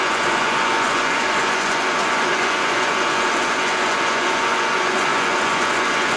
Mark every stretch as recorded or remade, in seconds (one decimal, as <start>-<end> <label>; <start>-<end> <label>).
0.0-6.2 remade